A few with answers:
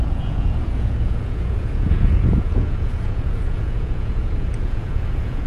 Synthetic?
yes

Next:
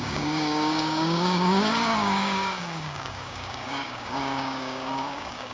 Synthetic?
yes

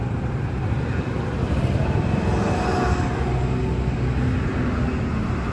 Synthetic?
no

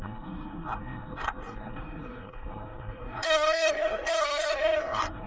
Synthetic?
yes